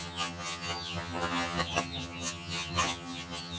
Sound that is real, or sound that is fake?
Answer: fake